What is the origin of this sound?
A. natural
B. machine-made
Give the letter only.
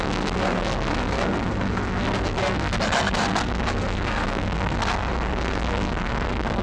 B